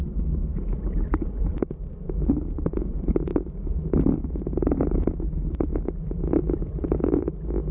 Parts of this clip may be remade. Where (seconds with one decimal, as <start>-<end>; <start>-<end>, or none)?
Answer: 5.7-7.7